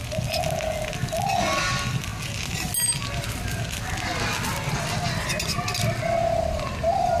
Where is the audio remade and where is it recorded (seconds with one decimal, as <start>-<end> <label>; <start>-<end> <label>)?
0.0-7.2 recorded